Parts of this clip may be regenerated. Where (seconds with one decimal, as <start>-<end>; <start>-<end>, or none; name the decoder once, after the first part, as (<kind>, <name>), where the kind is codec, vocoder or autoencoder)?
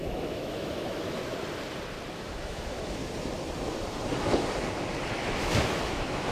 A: 0.0-1.2 (autoencoder, DAC-VAE); 2.1-3.0; 5.1-6.3